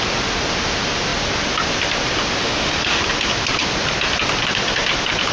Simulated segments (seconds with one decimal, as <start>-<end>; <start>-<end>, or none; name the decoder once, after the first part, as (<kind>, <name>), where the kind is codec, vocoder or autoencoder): 2.4-3.0 (autoencoder, DAC-VAE)